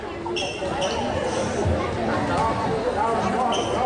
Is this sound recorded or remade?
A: recorded